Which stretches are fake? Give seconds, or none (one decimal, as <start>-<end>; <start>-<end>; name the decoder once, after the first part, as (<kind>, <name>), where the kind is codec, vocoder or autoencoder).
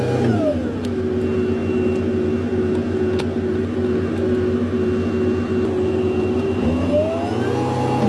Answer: none